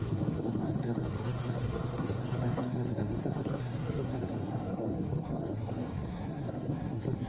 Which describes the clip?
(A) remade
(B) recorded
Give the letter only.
A